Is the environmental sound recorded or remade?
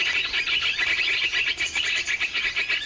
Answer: recorded